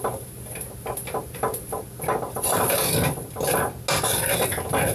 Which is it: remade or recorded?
recorded